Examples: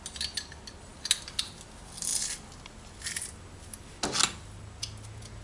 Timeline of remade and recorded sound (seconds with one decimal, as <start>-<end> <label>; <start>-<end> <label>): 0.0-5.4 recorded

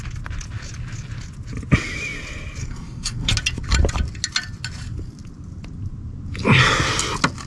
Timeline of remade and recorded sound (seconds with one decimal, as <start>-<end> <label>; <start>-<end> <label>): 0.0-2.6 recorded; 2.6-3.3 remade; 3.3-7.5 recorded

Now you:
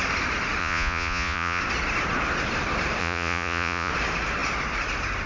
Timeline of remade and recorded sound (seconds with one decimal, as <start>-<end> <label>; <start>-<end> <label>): 0.0-0.6 recorded; 0.6-1.6 remade; 1.6-3.0 recorded; 3.0-3.9 remade; 3.9-5.3 recorded